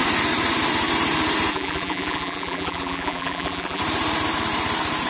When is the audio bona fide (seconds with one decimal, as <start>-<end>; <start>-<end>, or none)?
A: 0.0-1.5; 3.8-5.1